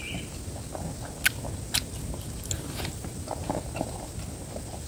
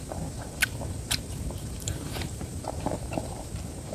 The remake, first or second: second